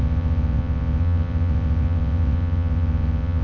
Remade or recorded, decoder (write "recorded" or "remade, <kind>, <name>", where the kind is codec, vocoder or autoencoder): remade, vocoder, WaveNeXt